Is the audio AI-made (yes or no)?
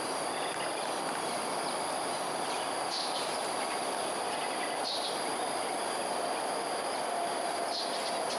no